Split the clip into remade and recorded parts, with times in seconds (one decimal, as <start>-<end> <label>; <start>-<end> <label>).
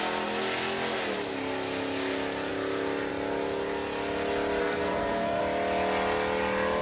0.0-4.6 recorded; 4.6-5.4 remade; 5.4-6.8 recorded